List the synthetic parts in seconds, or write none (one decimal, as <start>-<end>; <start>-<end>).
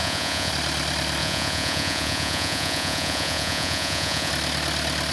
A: 0.0-0.5; 1.2-4.3